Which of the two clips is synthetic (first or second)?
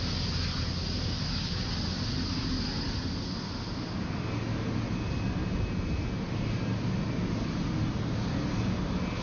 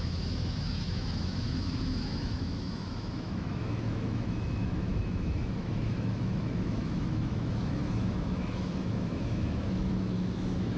second